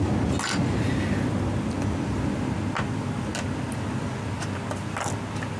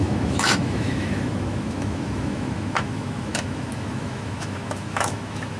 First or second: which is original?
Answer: first